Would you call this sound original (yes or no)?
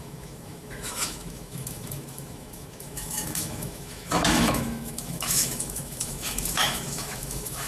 no